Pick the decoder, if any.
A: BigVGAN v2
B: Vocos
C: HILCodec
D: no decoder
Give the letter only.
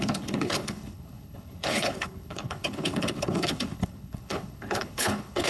C